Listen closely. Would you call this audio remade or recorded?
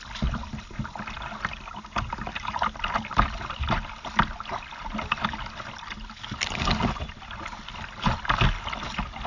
recorded